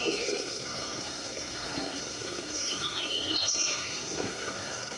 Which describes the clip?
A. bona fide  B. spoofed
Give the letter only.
B